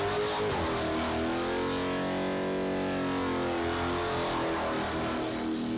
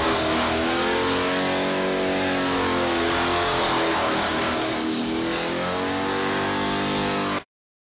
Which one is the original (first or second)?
first